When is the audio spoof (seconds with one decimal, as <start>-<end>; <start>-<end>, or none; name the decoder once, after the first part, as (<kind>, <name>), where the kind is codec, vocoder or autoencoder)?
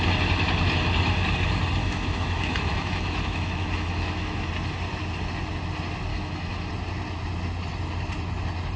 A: 1.8-4.5 (autoencoder, DAC-VAE); 6.1-6.7